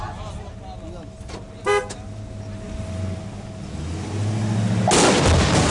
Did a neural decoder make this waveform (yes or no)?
no